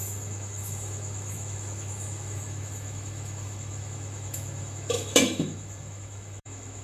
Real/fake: fake